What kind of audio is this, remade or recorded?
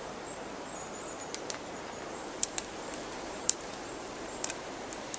remade